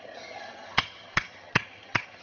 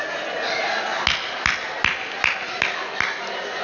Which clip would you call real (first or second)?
second